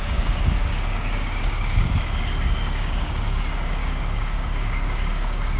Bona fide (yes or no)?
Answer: no